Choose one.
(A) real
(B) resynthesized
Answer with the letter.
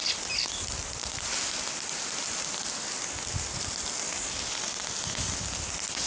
A